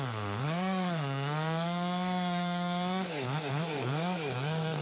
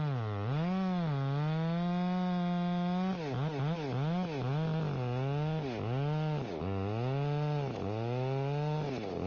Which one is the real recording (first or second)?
second